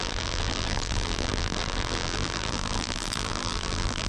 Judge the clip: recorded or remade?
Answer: remade